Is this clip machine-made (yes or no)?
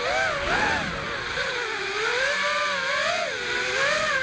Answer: no